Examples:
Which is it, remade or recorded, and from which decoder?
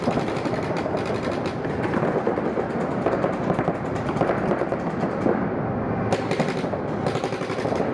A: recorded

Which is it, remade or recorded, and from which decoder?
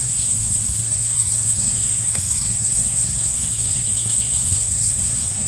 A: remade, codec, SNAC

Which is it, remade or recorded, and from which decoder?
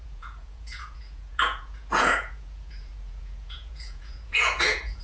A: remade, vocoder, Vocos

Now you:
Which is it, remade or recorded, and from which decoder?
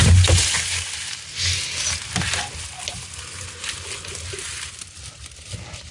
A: recorded